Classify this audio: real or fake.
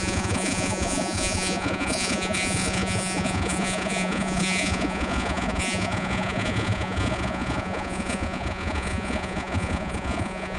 fake